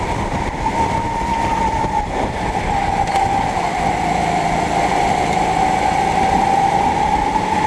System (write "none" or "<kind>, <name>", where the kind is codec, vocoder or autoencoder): none